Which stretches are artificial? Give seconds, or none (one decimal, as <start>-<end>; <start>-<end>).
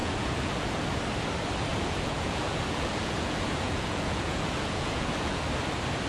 0.0-0.8; 1.7-5.4